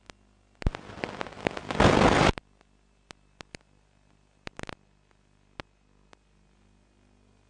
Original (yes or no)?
yes